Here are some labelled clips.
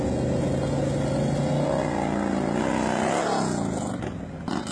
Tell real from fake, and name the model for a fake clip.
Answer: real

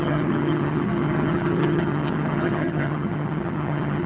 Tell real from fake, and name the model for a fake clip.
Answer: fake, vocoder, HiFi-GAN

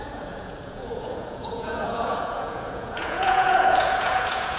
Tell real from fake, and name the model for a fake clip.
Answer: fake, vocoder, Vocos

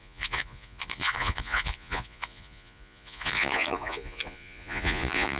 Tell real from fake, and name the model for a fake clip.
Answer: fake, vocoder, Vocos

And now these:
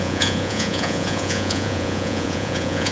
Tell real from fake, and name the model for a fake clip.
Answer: fake, vocoder, Vocos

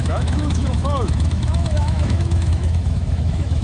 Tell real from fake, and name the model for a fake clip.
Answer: fake, autoencoder, DAC-VAE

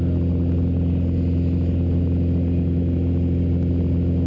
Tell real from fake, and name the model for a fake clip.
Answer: real